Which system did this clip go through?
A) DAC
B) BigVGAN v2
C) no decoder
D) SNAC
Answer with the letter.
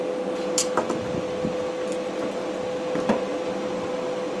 C